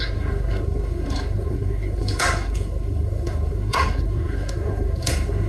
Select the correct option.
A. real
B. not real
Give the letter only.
B